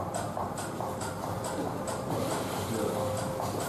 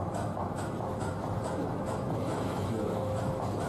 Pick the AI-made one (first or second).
second